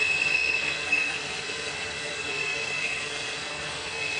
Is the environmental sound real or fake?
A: fake